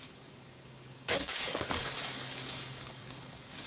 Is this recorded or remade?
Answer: remade